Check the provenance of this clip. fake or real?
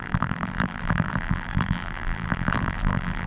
fake